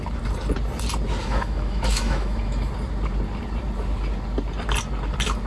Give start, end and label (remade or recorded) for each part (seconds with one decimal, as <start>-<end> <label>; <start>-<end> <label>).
0.0-1.2 recorded; 1.2-2.7 remade; 2.7-5.5 recorded